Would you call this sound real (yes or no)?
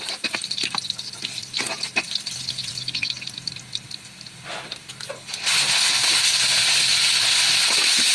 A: yes